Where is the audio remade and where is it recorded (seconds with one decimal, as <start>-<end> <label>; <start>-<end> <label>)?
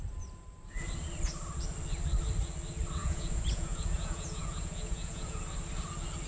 0.0-3.0 recorded; 3.0-5.4 remade; 5.4-6.3 recorded